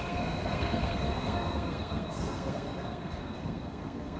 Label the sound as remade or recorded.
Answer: remade